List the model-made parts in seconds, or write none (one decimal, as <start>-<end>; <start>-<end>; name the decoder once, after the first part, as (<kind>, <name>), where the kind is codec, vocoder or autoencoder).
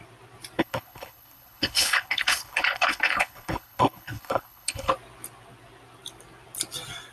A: 0.6-4.9 (codec, HILCodec)